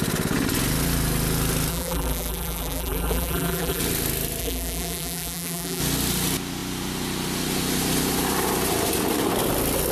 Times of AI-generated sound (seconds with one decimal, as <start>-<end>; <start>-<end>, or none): 1.7-3.8; 4.4-5.8